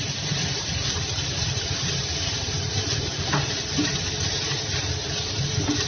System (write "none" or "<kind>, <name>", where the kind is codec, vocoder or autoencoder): vocoder, BigVGAN v2